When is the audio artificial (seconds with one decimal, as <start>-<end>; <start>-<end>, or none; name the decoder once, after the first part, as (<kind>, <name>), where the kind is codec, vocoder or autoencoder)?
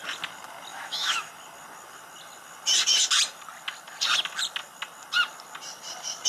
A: 0.7-1.3 (autoencoder, DAC-VAE)